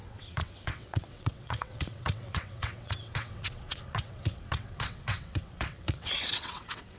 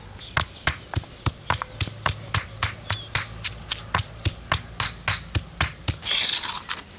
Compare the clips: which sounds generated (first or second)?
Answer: first